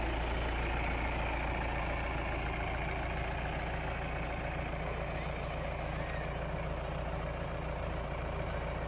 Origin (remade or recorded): recorded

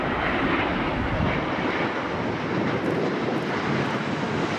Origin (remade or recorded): recorded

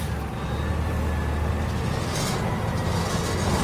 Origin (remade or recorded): recorded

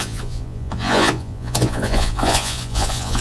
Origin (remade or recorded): remade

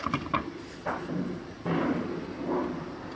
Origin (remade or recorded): recorded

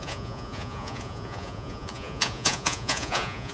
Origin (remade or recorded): remade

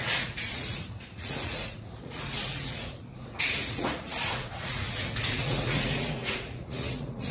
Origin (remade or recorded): remade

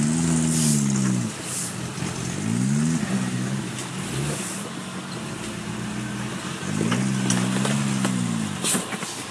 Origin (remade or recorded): recorded